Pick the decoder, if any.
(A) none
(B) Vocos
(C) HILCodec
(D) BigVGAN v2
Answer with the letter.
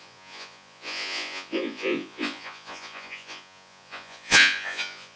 B